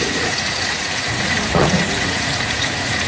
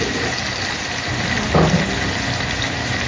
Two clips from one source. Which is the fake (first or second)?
first